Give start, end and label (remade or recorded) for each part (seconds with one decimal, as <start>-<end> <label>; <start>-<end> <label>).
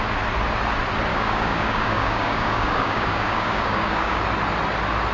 0.0-1.1 recorded; 1.1-4.2 remade; 4.2-5.1 recorded